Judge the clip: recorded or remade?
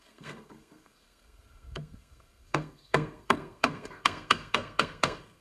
remade